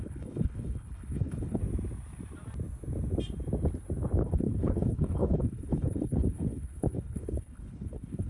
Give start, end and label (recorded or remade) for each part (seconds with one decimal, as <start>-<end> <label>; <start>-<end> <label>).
0.0-1.6 remade; 1.6-4.2 recorded; 4.2-8.3 remade